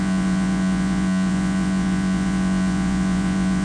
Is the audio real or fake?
fake